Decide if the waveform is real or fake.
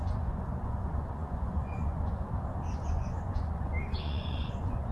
fake